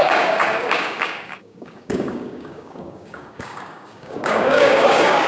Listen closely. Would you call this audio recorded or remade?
remade